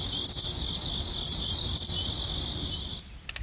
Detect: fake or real real